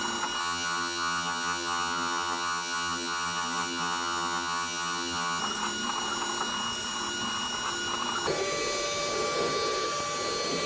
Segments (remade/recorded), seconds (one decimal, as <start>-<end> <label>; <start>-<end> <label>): 0.0-0.4 recorded; 0.4-5.4 remade; 5.4-10.7 recorded